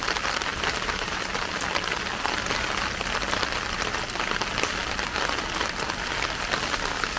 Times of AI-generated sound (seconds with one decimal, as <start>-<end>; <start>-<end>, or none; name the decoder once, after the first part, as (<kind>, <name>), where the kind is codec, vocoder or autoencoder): 0.5-1.1 (vocoder, BigVGAN v2)